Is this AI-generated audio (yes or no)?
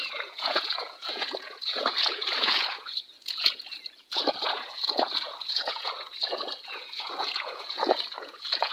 yes